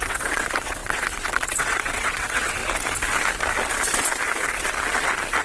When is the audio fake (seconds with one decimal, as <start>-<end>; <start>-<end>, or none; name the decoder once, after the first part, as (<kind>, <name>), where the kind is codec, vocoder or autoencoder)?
0.0-2.6 (vocoder, WaveNeXt)